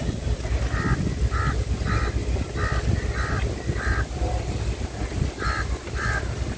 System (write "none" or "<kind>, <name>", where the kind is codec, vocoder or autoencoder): none